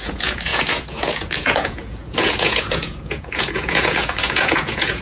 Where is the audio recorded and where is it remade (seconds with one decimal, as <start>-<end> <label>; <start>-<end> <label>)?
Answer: 0.0-5.0 remade